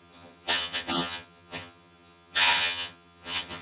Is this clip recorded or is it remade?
remade